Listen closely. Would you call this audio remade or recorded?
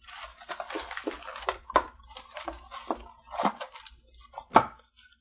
recorded